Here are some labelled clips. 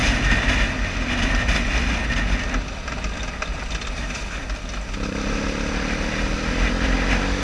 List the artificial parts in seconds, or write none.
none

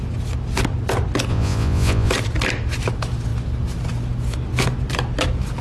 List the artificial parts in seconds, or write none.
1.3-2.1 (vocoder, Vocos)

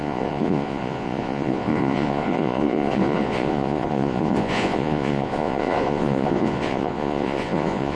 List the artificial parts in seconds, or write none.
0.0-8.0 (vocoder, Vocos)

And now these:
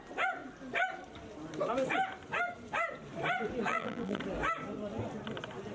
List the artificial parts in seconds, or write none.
3.7-4.2 (vocoder, BigVGAN v2)